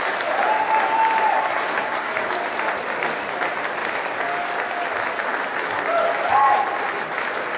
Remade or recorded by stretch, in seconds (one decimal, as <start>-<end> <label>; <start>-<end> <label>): 0.0-1.4 recorded; 1.4-2.1 remade; 2.1-7.6 recorded